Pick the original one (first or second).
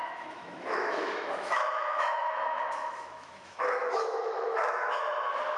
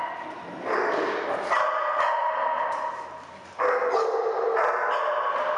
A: second